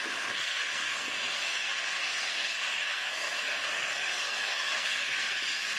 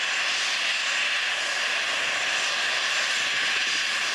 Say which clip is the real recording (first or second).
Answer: second